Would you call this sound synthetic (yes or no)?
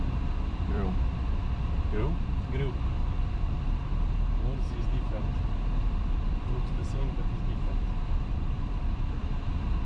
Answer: yes